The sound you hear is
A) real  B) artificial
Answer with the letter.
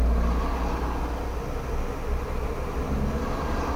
A